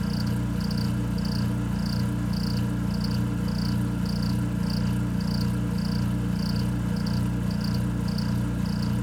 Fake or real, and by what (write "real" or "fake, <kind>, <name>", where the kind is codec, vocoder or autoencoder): real